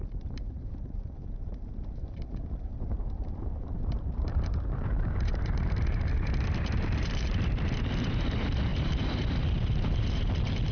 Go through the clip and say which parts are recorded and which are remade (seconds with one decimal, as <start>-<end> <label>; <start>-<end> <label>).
0.0-10.7 remade